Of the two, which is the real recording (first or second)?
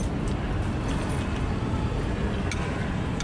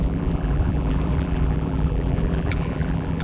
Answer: first